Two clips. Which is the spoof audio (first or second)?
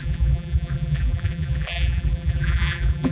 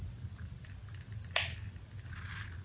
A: first